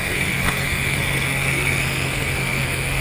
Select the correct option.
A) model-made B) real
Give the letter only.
A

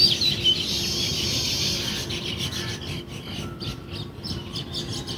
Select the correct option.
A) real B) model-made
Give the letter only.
A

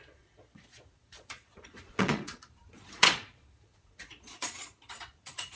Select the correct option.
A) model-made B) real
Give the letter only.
A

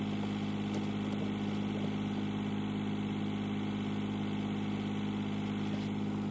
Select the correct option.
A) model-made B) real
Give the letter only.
B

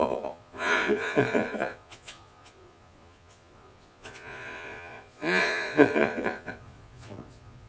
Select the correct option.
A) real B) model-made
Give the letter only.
B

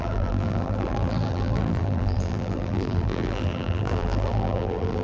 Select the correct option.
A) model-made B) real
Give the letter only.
A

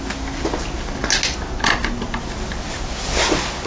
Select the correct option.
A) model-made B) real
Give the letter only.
B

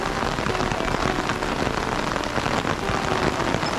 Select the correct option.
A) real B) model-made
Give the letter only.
A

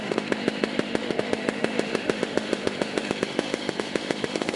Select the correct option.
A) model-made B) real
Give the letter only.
A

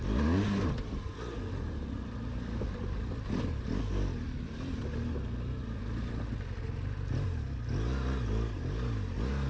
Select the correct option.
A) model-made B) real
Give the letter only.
B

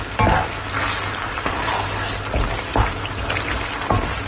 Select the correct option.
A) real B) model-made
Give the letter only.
A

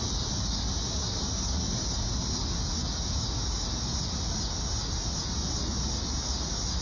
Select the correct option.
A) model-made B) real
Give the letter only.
B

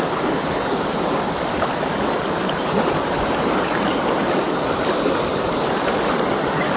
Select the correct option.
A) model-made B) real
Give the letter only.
B